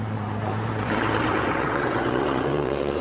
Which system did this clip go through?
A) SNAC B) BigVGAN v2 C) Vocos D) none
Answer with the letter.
C